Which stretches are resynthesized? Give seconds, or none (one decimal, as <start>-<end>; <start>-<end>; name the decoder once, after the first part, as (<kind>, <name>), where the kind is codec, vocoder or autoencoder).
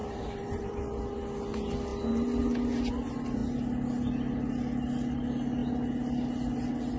0.0-0.8 (vocoder, BigVGAN v2)